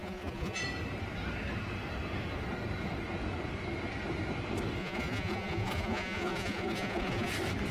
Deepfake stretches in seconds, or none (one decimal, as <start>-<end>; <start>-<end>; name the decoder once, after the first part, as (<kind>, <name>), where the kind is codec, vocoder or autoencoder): 0.0-0.6 (vocoder, Vocos); 4.8-7.3